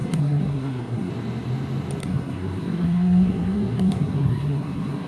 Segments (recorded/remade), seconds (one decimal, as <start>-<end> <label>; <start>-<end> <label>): 0.0-1.1 remade; 1.1-2.0 recorded; 2.0-5.1 remade